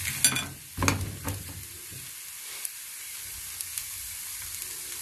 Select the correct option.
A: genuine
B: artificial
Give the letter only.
A